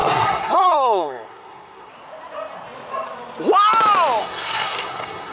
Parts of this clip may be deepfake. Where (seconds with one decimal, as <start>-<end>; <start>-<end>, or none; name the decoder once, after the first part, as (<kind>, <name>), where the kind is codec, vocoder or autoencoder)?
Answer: 0.0-1.9 (codec, SNAC); 4.2-5.3

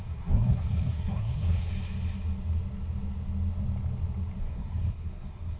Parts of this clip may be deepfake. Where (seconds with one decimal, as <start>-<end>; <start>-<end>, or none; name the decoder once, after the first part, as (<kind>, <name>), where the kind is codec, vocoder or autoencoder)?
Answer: 0.0-1.7 (codec, SNAC); 4.4-5.6

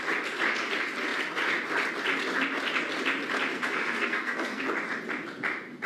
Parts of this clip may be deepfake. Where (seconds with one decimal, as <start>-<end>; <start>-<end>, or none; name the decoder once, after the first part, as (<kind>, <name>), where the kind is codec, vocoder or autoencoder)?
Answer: 3.5-4.6 (codec, SNAC)